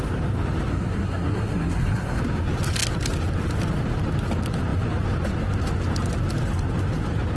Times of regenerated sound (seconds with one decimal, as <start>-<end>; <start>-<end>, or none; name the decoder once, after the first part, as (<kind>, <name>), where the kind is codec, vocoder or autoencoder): 0.7-2.2 (codec, SNAC)